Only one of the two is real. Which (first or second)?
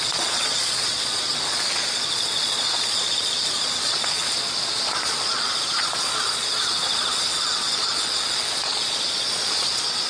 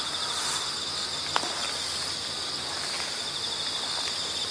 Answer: second